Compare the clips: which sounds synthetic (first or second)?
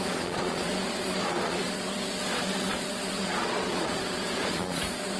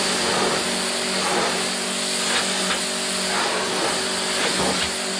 first